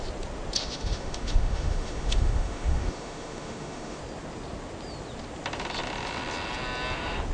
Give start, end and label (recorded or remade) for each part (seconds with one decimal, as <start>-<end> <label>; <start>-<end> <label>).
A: 0.0-0.6 recorded; 0.6-4.0 remade; 4.0-7.3 recorded

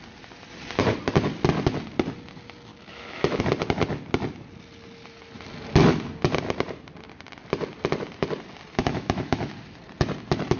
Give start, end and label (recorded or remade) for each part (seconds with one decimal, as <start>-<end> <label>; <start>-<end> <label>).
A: 0.0-2.7 recorded; 2.7-3.4 remade; 3.4-8.8 recorded; 8.8-9.5 remade; 9.5-10.6 recorded